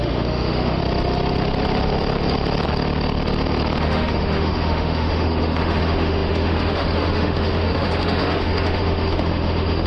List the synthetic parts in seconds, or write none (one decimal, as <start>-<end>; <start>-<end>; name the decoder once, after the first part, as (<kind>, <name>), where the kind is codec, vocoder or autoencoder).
0.0-0.8 (autoencoder, DAC-VAE); 3.8-9.9